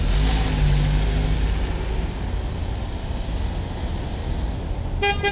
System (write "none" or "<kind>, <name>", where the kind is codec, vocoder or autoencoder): none